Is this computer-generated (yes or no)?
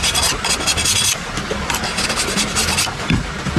no